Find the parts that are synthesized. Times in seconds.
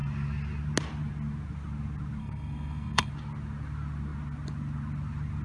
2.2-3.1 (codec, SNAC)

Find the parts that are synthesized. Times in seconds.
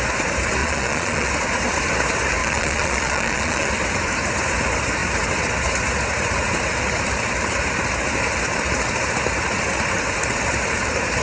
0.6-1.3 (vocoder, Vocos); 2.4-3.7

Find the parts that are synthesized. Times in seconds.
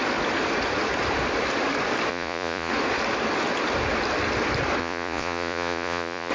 2.1-2.7 (vocoder, Vocos); 4.8-6.3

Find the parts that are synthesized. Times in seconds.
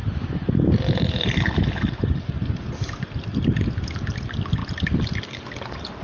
none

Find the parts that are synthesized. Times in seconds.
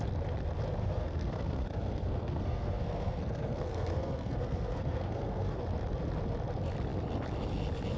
0.8-5.6 (codec, SNAC)